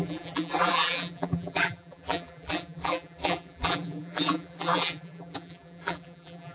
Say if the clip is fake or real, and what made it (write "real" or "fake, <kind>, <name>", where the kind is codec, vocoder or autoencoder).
fake, vocoder, BigVGAN v2